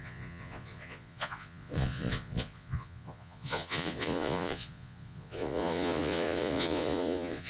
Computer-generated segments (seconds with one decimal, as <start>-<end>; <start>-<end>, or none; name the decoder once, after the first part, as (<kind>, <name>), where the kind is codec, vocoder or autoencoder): 0.0-7.5 (vocoder, Vocos)